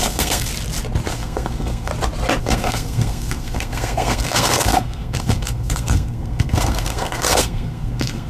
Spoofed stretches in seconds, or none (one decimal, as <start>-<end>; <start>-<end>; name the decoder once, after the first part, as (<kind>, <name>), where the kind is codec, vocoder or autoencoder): 0.0-0.5 (codec, SNAC); 1.1-1.9; 2.4-8.3